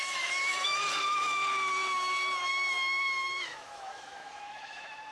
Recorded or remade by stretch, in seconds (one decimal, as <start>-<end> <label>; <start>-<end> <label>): 0.0-0.8 remade; 0.8-1.7 recorded; 1.7-5.1 remade